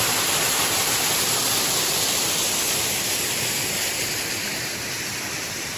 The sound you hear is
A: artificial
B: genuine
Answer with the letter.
A